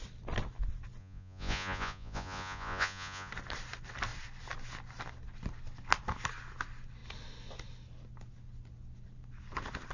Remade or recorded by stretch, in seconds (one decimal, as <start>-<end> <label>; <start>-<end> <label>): 0.0-1.0 recorded; 1.0-3.3 remade; 3.3-9.9 recorded